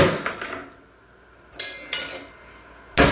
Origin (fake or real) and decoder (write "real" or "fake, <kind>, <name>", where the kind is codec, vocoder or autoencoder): real